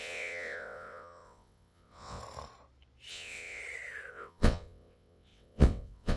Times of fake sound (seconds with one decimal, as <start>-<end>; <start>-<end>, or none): 0.0-2.2; 3.1-3.6; 4.1-6.2